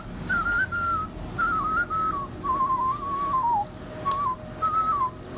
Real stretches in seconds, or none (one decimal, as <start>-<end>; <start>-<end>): 0.0-5.4

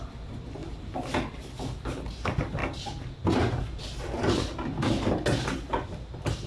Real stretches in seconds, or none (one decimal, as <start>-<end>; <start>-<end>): 0.0-6.5